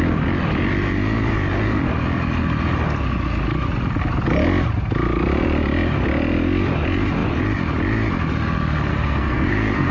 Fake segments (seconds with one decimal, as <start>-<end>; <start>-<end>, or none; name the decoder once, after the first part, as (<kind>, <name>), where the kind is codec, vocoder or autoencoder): 8.9-9.9 (codec, SNAC)